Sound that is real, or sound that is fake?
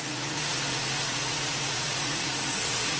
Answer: fake